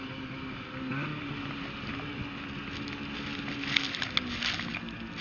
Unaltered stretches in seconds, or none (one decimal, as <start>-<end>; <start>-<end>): 0.0-5.2